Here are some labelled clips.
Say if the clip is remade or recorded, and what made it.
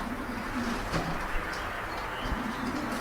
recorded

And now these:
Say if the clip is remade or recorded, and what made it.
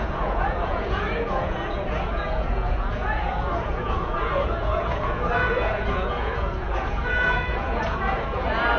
remade, vocoder, Vocos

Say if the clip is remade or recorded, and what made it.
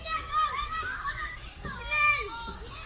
remade, codec, DAC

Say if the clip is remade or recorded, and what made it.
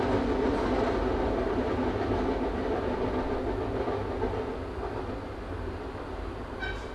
recorded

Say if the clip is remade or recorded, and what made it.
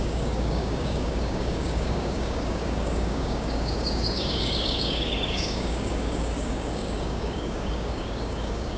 remade, codec, DAC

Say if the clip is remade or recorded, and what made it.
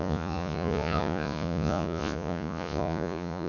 remade, vocoder, Vocos